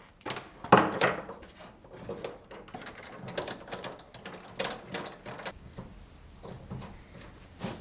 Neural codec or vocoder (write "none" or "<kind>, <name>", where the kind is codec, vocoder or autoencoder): none